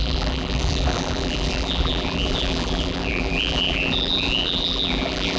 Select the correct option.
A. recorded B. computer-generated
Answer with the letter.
B